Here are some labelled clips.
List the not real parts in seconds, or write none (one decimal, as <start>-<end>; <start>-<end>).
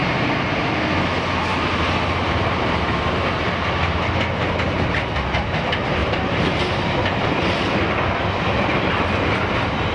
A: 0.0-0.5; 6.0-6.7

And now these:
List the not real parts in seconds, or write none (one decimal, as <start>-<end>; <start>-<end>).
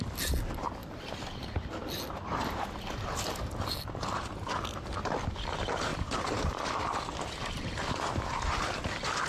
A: 0.8-1.7; 5.9-6.6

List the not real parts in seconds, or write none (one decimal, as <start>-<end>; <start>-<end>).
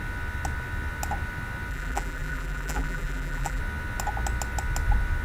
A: 1.7-3.6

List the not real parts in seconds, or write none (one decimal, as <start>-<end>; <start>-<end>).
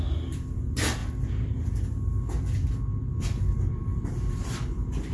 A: 0.0-1.0; 3.7-5.1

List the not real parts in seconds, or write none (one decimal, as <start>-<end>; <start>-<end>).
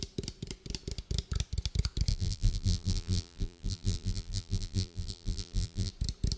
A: 2.1-5.9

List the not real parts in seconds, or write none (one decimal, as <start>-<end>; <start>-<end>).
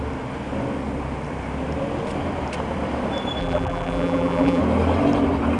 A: 3.4-4.6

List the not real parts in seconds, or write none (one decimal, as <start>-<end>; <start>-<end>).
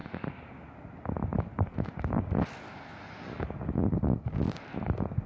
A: 0.0-0.5